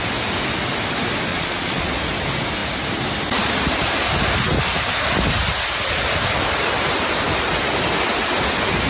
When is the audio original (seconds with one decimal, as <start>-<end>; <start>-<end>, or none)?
0.0-1.3; 1.9-8.9